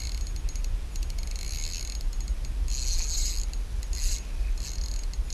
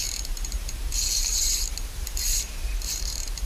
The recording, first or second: first